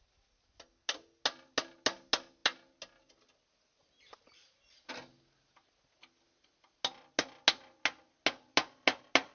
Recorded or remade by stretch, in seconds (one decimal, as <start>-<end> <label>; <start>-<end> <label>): 0.0-9.3 recorded